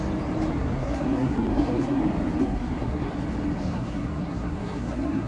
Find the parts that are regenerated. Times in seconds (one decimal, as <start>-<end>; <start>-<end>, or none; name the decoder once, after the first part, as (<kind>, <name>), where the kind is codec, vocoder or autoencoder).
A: 0.5-2.0 (codec, SNAC); 2.4-3.1; 3.6-5.3